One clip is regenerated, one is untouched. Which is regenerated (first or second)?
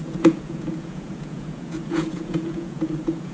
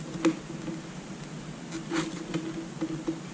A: first